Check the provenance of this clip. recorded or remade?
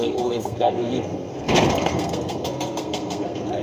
remade